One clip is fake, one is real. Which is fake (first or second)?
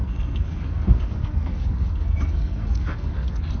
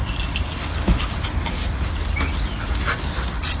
first